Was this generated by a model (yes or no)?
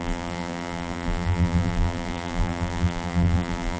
yes